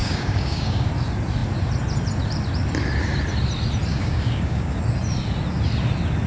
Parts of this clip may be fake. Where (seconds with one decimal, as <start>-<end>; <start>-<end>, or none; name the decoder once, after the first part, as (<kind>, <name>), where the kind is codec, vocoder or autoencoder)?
0.0-0.9 (codec, DAC); 3.9-4.8